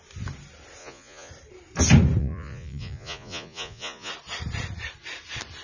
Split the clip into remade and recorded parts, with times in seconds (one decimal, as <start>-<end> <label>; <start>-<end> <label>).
0.0-0.8 recorded; 0.8-1.3 remade; 1.3-2.2 recorded; 2.2-4.1 remade; 4.1-5.6 recorded